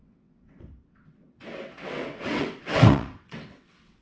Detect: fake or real fake